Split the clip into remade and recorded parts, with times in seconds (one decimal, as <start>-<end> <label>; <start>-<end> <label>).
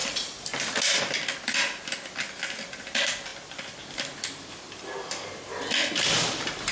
0.0-6.7 recorded